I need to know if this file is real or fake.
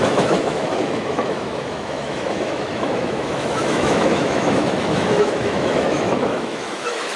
fake